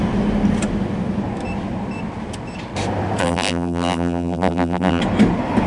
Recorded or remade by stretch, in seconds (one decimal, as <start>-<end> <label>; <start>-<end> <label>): 0.0-3.2 recorded; 3.2-5.0 remade; 5.0-5.7 recorded

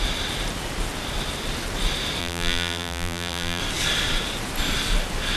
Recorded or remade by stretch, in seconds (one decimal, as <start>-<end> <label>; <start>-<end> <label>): 0.0-2.2 recorded; 2.2-3.6 remade; 3.6-5.4 recorded

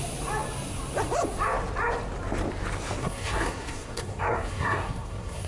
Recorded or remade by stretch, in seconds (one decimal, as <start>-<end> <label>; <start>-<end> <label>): 0.0-3.0 recorded; 3.0-5.5 remade

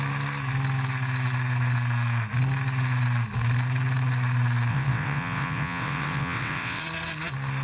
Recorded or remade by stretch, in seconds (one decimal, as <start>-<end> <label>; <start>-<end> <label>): 0.0-4.7 recorded; 4.7-6.8 remade; 6.8-7.6 recorded

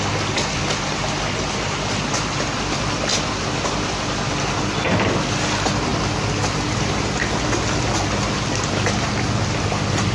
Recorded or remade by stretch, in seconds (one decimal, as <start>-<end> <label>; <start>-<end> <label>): 0.0-10.1 recorded